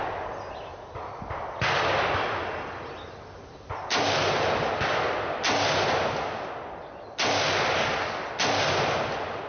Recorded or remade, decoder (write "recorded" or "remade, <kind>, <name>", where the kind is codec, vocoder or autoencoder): recorded